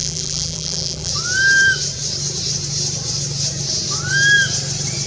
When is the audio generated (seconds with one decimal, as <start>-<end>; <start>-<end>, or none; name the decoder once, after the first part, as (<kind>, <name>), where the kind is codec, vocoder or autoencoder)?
0.0-1.1 (vocoder, BigVGAN v2)